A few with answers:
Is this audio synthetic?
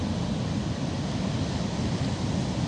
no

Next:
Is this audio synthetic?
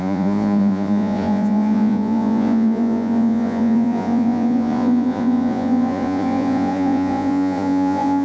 yes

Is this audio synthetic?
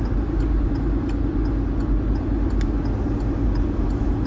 no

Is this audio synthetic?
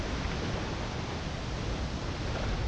no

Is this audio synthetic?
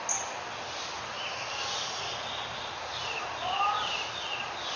no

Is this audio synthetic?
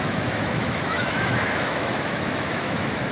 yes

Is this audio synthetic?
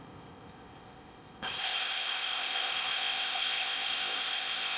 yes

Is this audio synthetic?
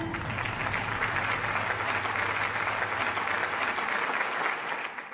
no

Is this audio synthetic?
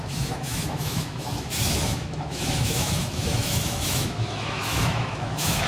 yes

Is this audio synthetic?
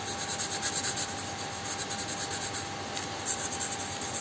no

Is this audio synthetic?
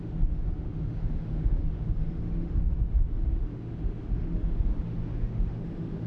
yes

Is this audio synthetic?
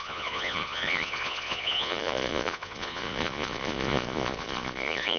yes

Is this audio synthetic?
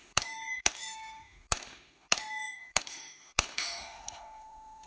yes